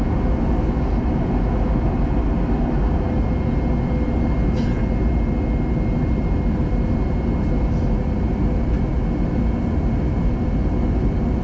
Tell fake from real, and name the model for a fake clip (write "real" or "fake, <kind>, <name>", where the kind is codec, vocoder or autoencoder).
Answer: real